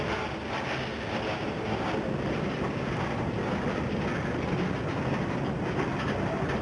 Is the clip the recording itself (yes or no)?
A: yes